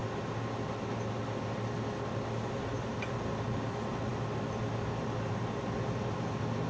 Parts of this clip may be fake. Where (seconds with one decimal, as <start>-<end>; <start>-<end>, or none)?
none